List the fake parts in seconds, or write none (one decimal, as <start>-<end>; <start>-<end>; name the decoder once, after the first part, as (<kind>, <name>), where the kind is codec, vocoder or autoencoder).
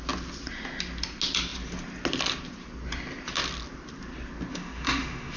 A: 4.5-5.4 (autoencoder, DAC-VAE)